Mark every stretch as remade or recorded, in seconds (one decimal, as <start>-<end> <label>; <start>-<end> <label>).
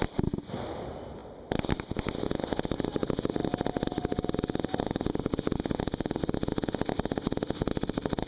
0.0-8.3 recorded